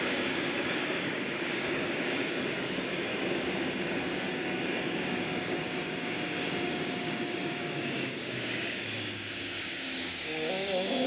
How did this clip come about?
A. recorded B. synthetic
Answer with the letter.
B